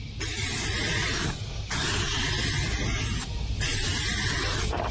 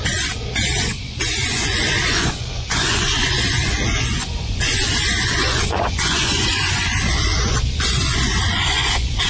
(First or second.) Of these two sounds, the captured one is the first